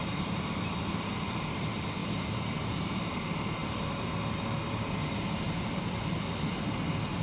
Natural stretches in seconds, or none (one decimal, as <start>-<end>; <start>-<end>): 0.0-2.0; 2.7-7.2